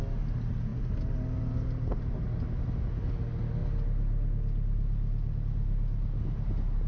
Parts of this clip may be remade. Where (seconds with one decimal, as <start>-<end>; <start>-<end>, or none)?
none

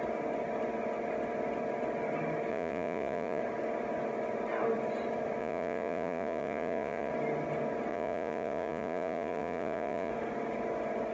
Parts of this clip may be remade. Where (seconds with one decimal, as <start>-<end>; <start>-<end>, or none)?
2.5-3.4; 5.4-7.1; 7.9-10.1

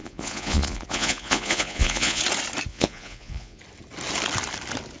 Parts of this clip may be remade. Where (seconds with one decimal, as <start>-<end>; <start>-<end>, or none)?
0.0-2.2; 2.7-3.6

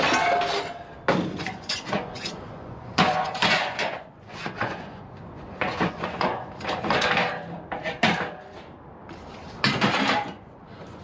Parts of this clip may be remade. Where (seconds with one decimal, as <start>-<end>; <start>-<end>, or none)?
1.3-6.5; 10.2-11.0